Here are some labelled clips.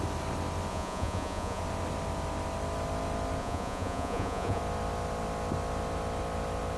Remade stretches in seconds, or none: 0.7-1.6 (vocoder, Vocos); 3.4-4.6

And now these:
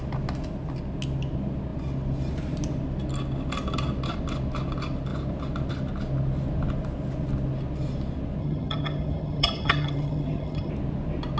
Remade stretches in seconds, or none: 8.4-10.7 (vocoder, HiFi-GAN)